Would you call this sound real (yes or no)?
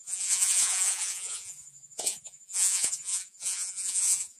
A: no